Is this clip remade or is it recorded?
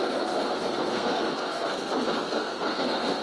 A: remade